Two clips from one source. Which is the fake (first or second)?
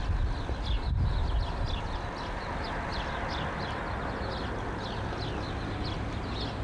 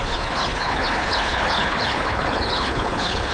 second